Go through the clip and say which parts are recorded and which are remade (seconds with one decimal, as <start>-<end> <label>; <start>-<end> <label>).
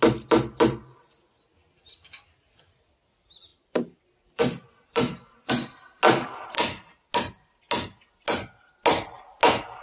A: 0.0-3.5 recorded; 3.5-5.5 remade; 5.5-9.8 recorded